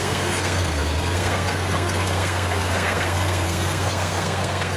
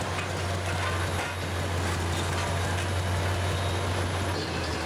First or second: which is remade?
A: first